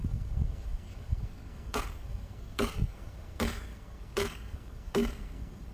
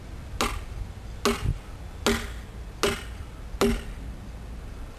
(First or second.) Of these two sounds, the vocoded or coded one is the first